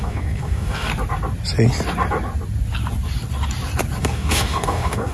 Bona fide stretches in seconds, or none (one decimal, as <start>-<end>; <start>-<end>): 0.9-4.0

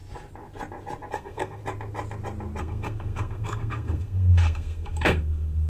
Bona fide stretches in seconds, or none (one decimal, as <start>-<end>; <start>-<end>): 0.0-1.1; 1.6-2.6

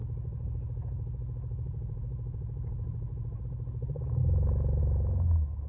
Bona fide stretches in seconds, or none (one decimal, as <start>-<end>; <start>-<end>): 3.4-5.7

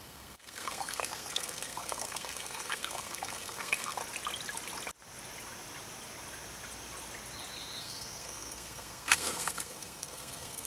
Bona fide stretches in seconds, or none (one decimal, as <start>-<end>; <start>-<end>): 4.0-7.8

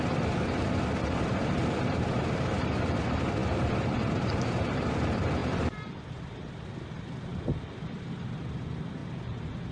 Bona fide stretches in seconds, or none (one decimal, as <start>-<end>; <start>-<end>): 3.4-4.2; 7.3-8.4; 9.0-9.7

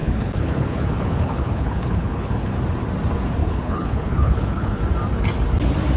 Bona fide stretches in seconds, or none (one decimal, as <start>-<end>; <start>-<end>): 2.5-3.4; 4.8-6.0

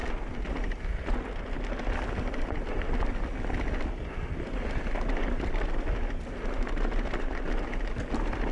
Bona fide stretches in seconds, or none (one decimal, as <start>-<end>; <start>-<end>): 0.0-8.5